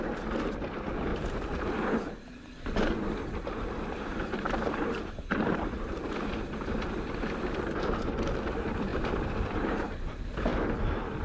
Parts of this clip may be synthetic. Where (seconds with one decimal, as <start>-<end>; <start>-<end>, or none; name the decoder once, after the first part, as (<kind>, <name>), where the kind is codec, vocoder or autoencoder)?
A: 1.1-6.1 (vocoder, BigVGAN v2); 8.9-9.9